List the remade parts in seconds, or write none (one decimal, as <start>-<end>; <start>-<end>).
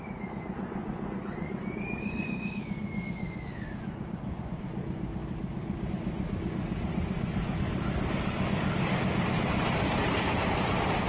0.8-4.6